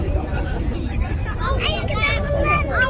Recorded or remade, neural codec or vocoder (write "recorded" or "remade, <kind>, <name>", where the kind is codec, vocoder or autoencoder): remade, vocoder, BigVGAN v2